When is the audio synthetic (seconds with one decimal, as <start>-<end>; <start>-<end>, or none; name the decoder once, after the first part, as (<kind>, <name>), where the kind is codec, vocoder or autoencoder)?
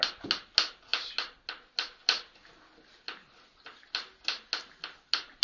none